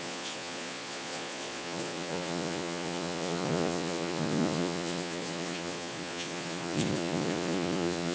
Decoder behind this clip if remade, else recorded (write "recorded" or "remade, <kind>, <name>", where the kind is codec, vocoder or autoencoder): remade, vocoder, Vocos